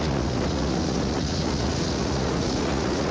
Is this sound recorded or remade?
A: remade